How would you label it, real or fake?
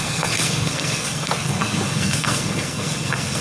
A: fake